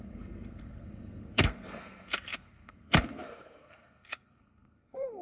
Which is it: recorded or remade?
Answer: remade